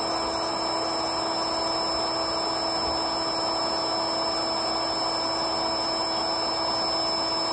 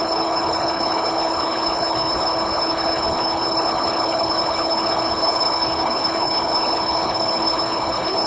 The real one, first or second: first